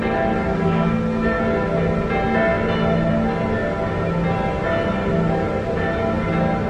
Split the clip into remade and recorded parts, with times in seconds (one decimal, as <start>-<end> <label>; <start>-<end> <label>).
0.0-0.5 recorded; 0.5-1.4 remade; 1.4-6.7 recorded